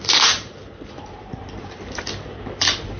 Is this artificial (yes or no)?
no